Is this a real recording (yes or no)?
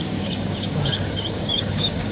no